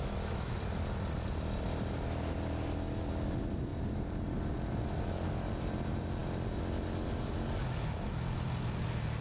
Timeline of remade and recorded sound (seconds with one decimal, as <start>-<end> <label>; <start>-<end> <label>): 0.0-0.5 remade; 0.5-9.2 recorded